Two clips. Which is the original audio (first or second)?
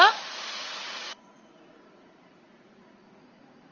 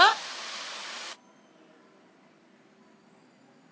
second